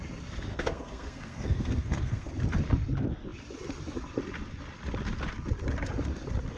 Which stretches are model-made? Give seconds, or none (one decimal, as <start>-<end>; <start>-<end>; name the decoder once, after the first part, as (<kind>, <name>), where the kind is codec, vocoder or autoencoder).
0.5-2.3 (codec, SNAC)